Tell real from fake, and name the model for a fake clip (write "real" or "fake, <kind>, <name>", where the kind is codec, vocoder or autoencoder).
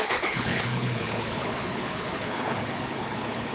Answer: fake, codec, HILCodec